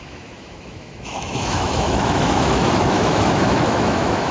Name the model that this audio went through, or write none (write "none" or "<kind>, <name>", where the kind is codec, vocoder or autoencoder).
autoencoder, DAC-VAE